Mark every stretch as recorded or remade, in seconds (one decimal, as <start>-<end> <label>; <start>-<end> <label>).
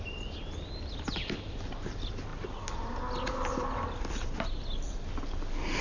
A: 0.0-5.8 recorded